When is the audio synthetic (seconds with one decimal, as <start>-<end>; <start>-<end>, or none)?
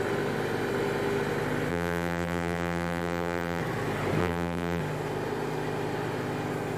1.7-3.6; 4.2-4.8